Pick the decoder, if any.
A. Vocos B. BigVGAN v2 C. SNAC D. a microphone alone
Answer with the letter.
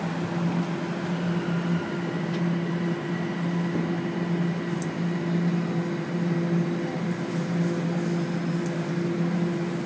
D